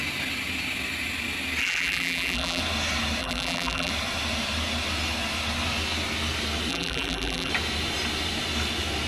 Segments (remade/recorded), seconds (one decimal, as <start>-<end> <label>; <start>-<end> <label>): 0.0-1.6 recorded; 1.6-2.6 remade; 2.6-3.2 recorded; 3.2-3.9 remade; 3.9-6.7 recorded; 6.7-7.5 remade; 7.5-9.1 recorded